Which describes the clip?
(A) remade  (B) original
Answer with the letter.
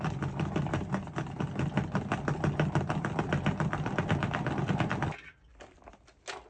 B